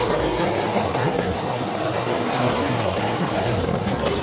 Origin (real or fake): fake